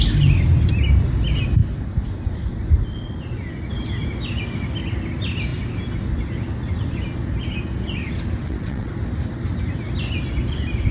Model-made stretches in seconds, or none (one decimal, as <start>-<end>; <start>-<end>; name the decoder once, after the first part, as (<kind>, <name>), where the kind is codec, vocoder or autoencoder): 8.4-8.9 (vocoder, WaveNeXt)